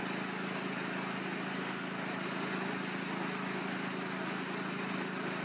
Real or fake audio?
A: real